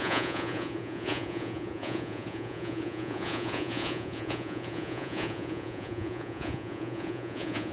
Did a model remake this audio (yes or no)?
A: yes